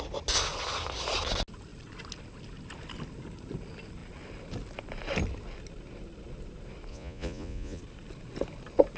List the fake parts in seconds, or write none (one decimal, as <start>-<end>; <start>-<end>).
6.9-7.8